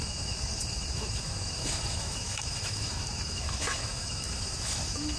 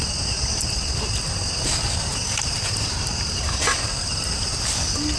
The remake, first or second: first